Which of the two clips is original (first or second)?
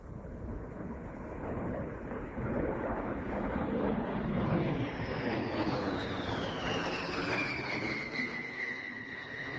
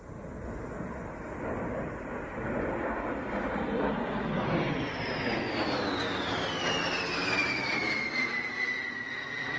second